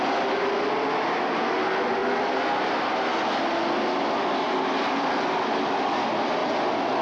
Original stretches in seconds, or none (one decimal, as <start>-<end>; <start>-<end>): 0.0-7.0